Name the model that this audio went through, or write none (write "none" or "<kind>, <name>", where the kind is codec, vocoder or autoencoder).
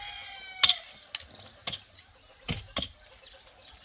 none